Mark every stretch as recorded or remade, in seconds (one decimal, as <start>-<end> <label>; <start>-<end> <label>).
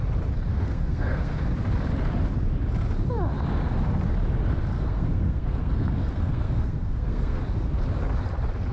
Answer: 0.0-0.5 recorded; 0.5-1.4 remade; 1.4-4.8 recorded; 4.8-7.4 remade; 7.4-8.7 recorded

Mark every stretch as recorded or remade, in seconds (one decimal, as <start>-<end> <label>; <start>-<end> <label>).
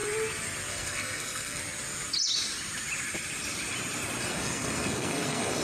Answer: 0.0-0.7 recorded; 0.7-1.6 remade; 1.6-4.2 recorded; 4.2-5.6 remade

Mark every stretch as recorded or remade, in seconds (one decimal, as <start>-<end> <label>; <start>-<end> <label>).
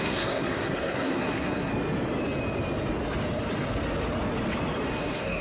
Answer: 0.0-1.7 remade; 1.7-4.9 recorded; 4.9-5.4 remade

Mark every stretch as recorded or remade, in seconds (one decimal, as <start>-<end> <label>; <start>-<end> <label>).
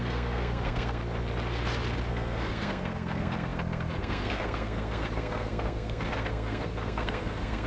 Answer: 0.0-1.0 remade; 1.0-2.1 recorded; 2.1-7.7 remade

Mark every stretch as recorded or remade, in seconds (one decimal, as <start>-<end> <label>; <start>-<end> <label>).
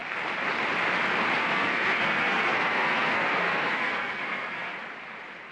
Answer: 0.0-1.4 recorded; 1.4-4.7 remade; 4.7-5.5 recorded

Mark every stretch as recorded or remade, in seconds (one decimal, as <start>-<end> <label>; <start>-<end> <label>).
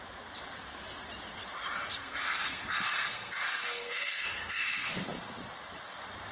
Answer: 0.0-2.0 recorded; 2.0-4.9 remade; 4.9-6.3 recorded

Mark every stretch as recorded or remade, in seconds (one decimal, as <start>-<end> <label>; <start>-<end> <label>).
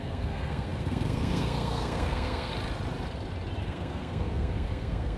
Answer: 0.0-2.5 remade; 2.5-3.6 recorded; 3.6-5.2 remade